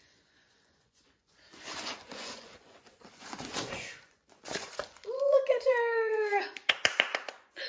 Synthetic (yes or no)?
yes